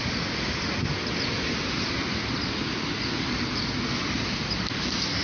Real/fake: real